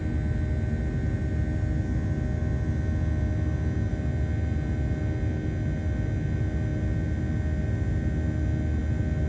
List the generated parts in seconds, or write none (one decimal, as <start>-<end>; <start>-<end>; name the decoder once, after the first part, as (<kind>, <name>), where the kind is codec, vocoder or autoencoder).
none

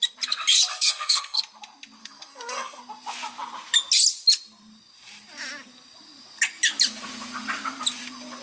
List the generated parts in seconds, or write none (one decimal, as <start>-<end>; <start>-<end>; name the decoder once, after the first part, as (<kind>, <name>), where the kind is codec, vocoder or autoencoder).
0.7-1.4 (codec, SNAC); 2.0-2.8

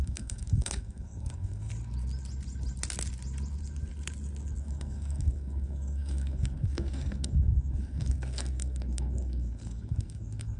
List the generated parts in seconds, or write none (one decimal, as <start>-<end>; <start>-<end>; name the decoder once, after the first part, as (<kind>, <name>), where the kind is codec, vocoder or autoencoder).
0.0-1.7 (codec, SNAC); 4.6-10.6

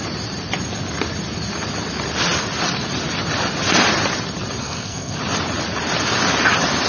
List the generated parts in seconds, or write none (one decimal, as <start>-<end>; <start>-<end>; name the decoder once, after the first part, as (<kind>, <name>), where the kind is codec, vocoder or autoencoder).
4.6-5.2 (codec, SNAC)

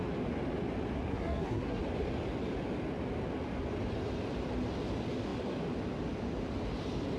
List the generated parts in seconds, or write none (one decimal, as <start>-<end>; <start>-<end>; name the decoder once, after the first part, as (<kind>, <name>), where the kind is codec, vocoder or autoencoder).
1.1-1.8 (codec, SNAC)

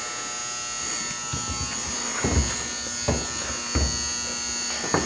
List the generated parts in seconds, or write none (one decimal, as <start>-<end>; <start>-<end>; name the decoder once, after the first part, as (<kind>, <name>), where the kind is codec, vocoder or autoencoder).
none